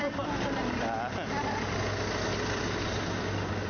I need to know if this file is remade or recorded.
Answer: recorded